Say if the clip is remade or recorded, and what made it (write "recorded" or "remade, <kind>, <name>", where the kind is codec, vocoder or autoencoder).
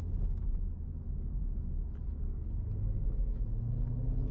recorded